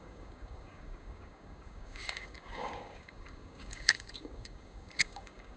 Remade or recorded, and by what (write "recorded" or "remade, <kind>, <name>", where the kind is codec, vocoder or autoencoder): remade, codec, DAC